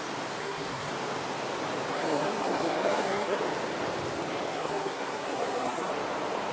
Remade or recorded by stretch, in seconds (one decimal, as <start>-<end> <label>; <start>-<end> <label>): 0.0-0.4 recorded; 0.4-0.9 remade; 0.9-1.9 recorded; 1.9-3.4 remade; 3.4-4.5 recorded; 4.5-5.9 remade; 5.9-6.5 recorded